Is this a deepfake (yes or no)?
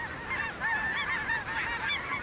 no